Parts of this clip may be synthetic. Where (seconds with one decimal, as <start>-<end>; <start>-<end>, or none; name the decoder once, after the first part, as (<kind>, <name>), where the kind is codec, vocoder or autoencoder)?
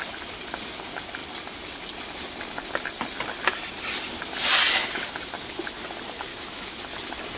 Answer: 6.3-6.8 (autoencoder, DAC-VAE)